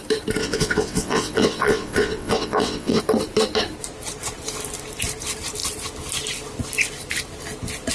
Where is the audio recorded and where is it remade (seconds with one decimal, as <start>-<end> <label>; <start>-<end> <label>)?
0.0-0.4 recorded; 0.4-3.0 remade; 3.0-7.9 recorded